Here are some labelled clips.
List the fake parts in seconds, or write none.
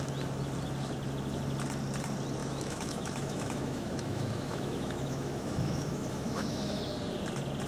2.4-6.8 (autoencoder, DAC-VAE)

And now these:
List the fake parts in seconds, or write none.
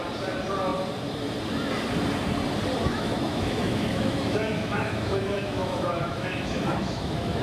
2.8-7.4 (autoencoder, DAC-VAE)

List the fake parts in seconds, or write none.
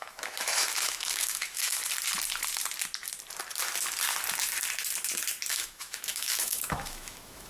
0.0-1.8 (autoencoder, DAC-VAE); 5.5-7.5